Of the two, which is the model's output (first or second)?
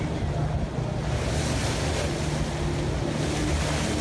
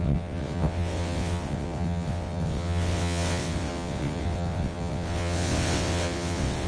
second